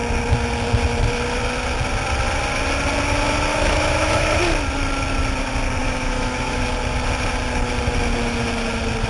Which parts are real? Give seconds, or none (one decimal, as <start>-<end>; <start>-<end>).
0.0-3.5; 4.4-5.8; 6.6-9.1